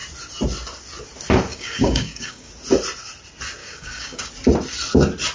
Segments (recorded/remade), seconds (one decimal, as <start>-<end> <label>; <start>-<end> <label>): 0.0-1.5 recorded; 1.5-2.5 remade; 2.5-3.6 recorded; 3.6-4.3 remade; 4.3-5.3 recorded